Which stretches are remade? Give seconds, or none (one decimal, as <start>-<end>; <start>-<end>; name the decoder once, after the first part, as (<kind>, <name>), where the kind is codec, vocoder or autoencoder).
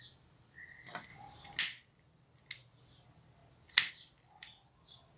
none